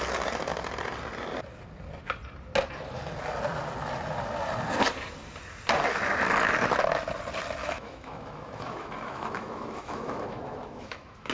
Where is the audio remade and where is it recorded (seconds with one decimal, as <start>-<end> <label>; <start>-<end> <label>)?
0.0-7.6 recorded; 7.6-11.3 remade